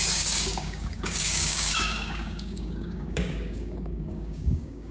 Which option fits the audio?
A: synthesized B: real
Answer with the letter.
A